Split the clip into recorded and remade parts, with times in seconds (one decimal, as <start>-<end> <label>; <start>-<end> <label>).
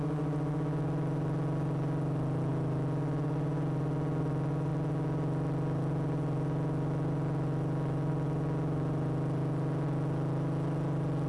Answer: 0.0-11.3 recorded